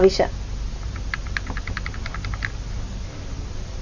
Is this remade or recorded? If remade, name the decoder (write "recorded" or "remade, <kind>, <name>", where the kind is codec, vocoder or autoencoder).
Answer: recorded